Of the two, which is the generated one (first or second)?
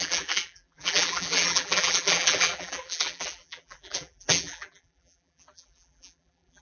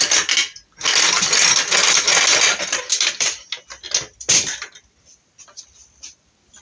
first